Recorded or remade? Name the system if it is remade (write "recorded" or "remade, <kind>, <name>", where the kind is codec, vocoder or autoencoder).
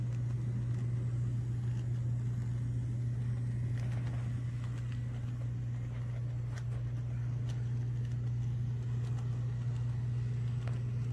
recorded